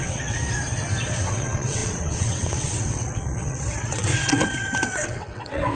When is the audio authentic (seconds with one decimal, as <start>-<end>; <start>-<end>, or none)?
0.4-1.1